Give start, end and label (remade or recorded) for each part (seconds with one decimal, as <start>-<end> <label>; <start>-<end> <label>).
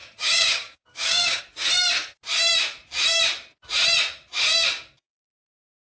0.0-1.4 remade; 1.4-5.8 recorded